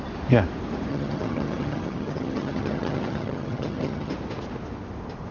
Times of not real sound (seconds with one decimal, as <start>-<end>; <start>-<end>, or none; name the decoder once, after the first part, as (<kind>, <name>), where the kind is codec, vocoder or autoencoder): 0.9-4.1 (vocoder, HiFi-GAN)